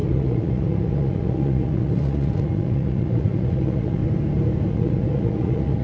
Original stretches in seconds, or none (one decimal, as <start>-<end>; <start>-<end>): 4.0-4.7